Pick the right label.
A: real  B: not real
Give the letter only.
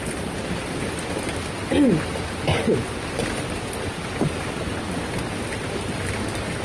A